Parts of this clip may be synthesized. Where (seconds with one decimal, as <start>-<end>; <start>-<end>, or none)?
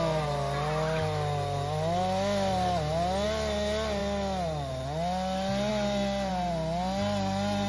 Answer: none